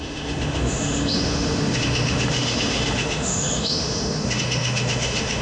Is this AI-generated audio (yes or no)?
yes